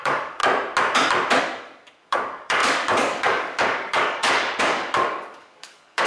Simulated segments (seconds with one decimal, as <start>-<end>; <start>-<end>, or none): 0.0-0.4; 1.4-6.1

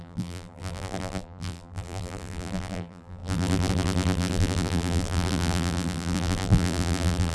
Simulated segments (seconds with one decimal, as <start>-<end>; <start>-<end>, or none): 0.0-7.3

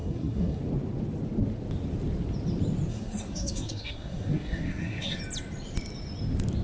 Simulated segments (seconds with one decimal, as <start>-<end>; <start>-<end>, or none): 0.0-0.6; 2.9-5.2

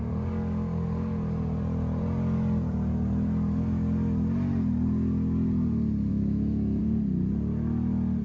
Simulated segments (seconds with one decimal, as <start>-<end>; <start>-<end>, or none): 6.1-6.8

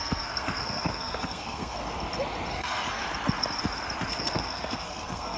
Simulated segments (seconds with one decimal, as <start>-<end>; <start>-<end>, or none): 0.0-1.8; 2.5-3.0; 4.1-5.4